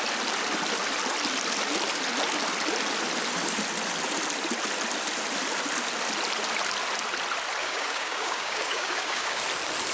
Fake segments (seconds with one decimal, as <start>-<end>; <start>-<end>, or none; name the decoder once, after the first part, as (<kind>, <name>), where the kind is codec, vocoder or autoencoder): 7.6-9.4 (codec, DAC)

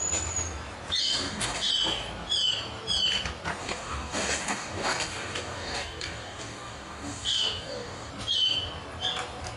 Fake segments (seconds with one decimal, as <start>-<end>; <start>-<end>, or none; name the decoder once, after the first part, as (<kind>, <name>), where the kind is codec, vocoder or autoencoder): 1.0-1.7 (codec, DAC); 3.6-8.1

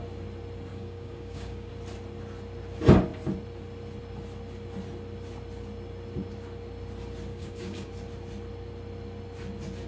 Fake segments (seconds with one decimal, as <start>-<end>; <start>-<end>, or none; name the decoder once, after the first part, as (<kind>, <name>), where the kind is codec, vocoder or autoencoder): 0.7-1.7 (codec, DAC); 7.3-7.9

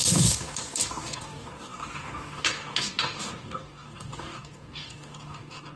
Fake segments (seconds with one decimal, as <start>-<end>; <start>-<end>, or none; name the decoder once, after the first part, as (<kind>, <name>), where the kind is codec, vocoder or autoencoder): 0.0-5.8 (codec, DAC)

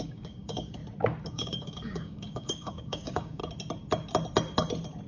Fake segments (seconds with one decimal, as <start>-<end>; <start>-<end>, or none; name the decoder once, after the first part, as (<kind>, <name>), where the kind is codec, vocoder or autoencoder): 0.0-0.8 (codec, DAC); 1.3-3.4

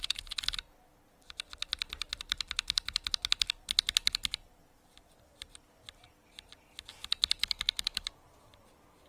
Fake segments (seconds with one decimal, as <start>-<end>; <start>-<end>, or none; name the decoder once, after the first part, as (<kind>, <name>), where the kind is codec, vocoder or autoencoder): 7.4-8.1 (codec, DAC)